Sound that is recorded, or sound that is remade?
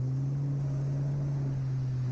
recorded